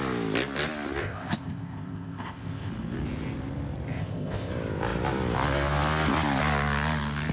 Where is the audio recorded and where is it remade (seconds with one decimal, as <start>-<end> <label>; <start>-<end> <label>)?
0.0-1.0 recorded; 1.0-2.7 remade; 2.7-3.9 recorded; 3.9-4.5 remade; 4.5-7.3 recorded